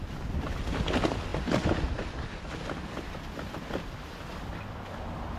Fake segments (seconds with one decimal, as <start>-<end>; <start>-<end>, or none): none